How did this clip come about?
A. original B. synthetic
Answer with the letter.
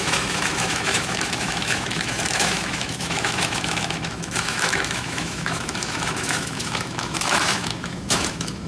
B